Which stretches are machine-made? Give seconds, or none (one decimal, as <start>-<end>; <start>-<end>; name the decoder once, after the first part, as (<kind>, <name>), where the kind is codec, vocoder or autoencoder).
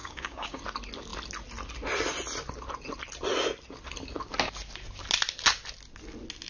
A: 0.0-0.6 (codec, DAC)